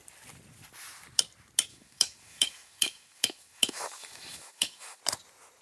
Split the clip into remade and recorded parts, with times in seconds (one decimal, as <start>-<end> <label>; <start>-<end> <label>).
0.0-1.7 recorded; 1.7-5.0 remade; 5.0-5.6 recorded